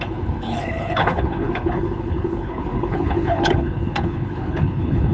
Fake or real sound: fake